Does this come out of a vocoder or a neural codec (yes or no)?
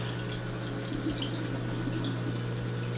no